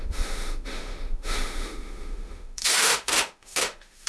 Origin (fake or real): fake